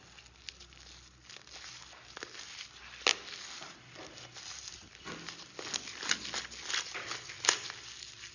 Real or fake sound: real